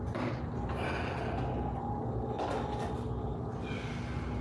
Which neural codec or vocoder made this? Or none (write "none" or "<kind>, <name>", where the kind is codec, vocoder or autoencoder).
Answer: none